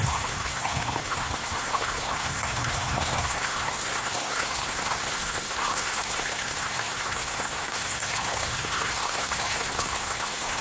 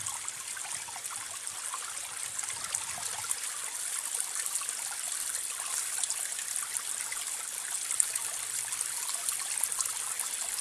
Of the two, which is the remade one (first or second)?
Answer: first